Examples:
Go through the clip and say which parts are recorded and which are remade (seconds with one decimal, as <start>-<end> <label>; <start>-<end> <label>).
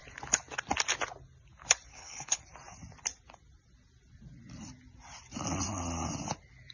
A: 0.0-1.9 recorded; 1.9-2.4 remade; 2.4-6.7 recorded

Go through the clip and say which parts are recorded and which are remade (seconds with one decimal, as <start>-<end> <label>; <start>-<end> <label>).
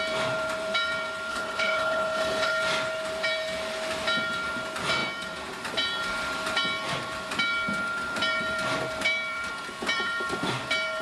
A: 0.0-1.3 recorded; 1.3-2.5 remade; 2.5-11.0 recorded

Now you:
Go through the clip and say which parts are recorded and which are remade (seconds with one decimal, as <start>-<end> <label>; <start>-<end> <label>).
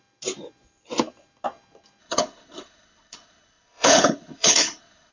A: 0.0-2.0 recorded; 2.0-5.1 remade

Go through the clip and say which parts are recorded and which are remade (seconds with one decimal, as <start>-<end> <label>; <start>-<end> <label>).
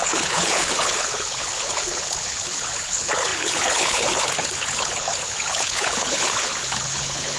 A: 0.0-7.4 remade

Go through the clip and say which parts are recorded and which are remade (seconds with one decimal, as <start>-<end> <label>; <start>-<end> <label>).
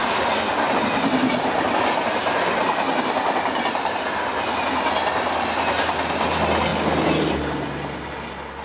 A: 0.0-8.6 recorded